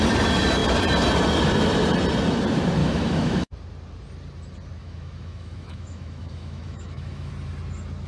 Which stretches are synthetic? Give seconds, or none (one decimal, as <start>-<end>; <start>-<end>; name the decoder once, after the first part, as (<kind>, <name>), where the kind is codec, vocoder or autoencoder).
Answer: 2.8-3.5 (autoencoder, DAC-VAE); 4.8-7.3